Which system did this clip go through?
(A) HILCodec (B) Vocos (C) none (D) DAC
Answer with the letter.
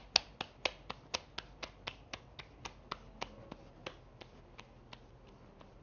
C